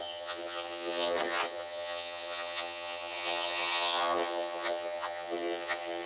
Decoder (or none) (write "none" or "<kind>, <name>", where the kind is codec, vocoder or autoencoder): vocoder, HiFi-GAN